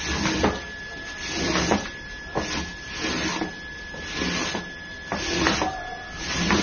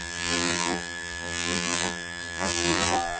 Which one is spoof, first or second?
second